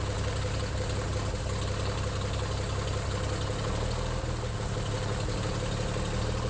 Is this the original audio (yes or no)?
yes